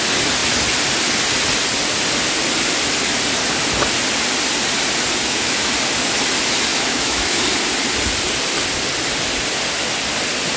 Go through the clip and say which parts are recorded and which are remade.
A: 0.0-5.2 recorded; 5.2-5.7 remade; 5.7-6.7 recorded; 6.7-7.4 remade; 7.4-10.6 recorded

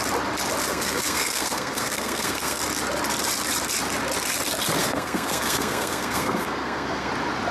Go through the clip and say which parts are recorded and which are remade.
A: 0.0-0.6 recorded; 0.6-2.6 remade; 2.6-4.8 recorded; 4.8-7.1 remade; 7.1-7.5 recorded

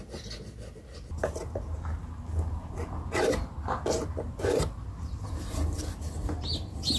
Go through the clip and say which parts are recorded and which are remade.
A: 0.0-7.0 recorded

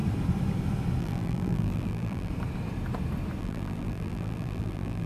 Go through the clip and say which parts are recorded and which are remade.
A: 0.0-1.0 recorded; 1.0-2.3 remade; 2.3-3.4 recorded; 3.4-5.1 remade

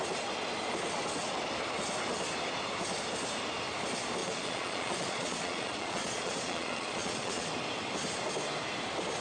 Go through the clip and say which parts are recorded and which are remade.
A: 0.0-4.2 recorded; 4.2-7.5 remade; 7.5-9.2 recorded

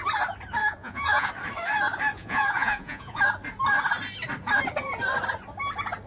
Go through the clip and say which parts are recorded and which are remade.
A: 0.0-0.6 recorded; 0.6-1.3 remade; 1.3-2.2 recorded; 2.2-3.2 remade; 3.2-6.1 recorded

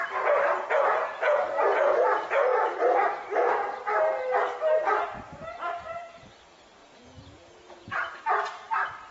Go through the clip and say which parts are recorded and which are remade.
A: 0.0-0.8 recorded; 0.8-1.4 remade; 1.4-6.8 recorded; 6.8-8.2 remade; 8.2-9.1 recorded